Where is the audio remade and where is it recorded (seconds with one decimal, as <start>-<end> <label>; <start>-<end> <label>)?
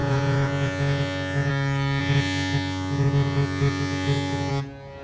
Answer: 0.0-1.5 remade; 1.5-2.0 recorded; 2.0-4.5 remade; 4.5-5.0 recorded